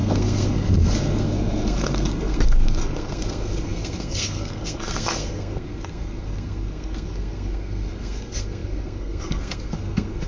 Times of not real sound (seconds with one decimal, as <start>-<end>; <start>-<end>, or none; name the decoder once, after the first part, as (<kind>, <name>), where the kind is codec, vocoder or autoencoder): 0.0-10.3 (codec, SNAC)